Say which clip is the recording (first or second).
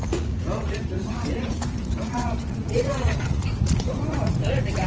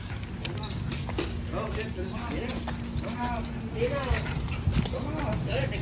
second